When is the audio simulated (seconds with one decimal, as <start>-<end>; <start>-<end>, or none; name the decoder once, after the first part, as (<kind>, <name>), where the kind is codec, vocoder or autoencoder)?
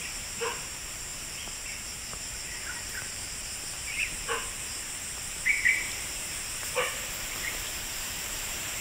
0.0-1.1 (vocoder, BigVGAN v2); 2.3-8.8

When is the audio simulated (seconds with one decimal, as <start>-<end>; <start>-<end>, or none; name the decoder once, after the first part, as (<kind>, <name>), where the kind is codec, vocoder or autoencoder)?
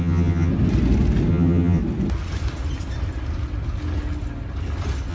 0.0-0.5 (vocoder, HiFi-GAN); 1.3-1.8